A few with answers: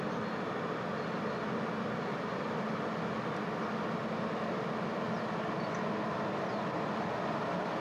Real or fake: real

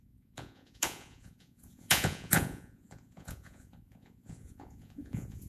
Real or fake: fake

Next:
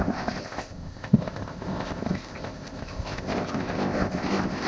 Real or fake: fake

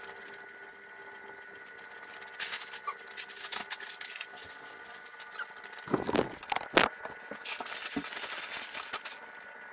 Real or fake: real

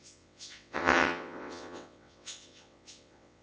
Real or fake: fake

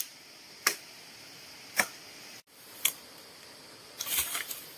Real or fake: fake